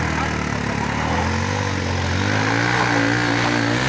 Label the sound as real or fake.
real